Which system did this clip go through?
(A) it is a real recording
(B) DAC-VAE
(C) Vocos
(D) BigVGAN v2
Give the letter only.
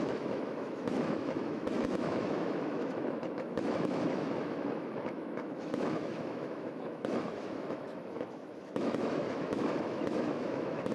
B